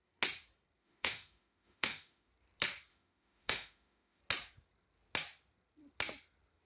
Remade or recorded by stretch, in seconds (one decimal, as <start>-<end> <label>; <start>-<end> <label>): 0.0-0.8 recorded; 0.8-2.3 remade; 2.3-2.9 recorded; 2.9-4.2 remade; 4.2-6.7 recorded